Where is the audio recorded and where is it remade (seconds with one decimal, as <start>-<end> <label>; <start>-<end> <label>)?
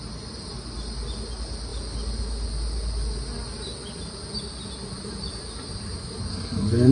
0.0-6.3 recorded; 6.3-6.9 remade